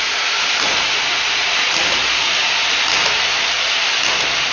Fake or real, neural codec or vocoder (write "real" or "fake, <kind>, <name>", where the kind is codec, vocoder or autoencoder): real